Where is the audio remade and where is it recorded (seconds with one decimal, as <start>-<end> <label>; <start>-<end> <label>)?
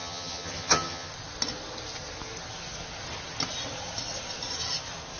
0.0-1.1 remade; 1.1-5.2 recorded